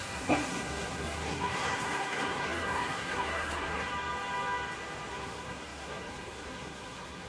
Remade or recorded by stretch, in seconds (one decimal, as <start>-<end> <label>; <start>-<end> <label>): 0.0-3.9 remade; 3.9-5.1 recorded; 5.1-7.3 remade